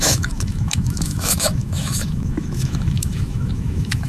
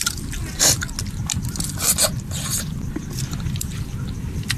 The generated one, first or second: first